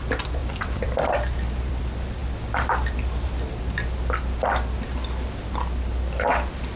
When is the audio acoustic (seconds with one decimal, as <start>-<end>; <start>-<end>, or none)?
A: 0.0-0.4; 1.8-6.8